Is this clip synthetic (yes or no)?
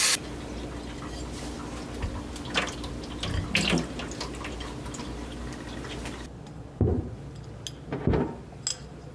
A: no